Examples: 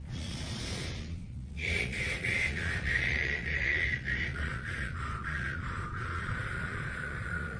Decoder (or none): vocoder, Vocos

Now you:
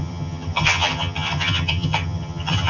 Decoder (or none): vocoder, HiFi-GAN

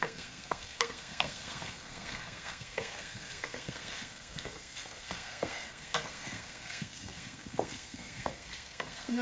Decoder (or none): codec, SNAC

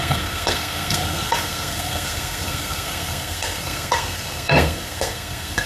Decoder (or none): codec, SNAC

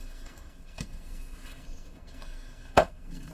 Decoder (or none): codec, SNAC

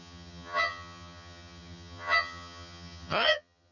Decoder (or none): vocoder, HiFi-GAN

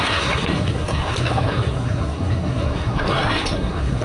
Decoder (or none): codec, SNAC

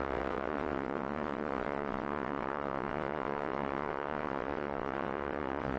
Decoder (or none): vocoder, WaveNeXt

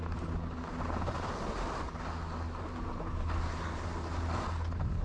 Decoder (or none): none